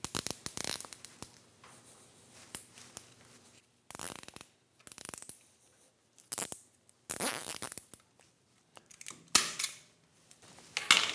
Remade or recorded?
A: recorded